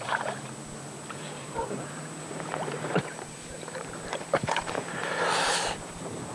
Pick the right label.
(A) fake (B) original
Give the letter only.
A